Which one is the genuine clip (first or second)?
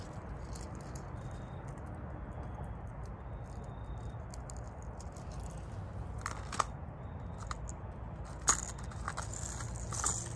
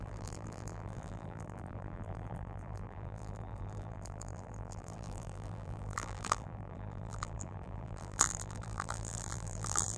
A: first